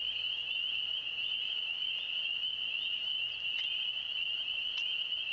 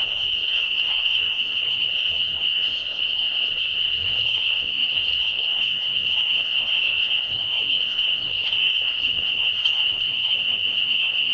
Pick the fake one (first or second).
second